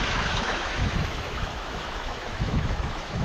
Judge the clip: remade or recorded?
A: remade